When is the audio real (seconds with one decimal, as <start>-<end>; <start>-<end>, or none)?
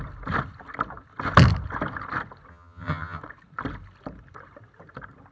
0.0-2.5; 3.2-5.3